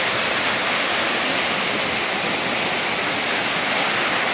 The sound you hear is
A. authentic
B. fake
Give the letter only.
A